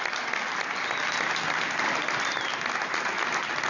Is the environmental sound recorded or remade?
recorded